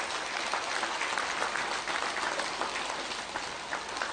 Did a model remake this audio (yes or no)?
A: no